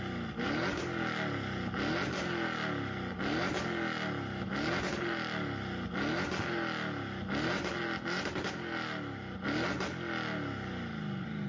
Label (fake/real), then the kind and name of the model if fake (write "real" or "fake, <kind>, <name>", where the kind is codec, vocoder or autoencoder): real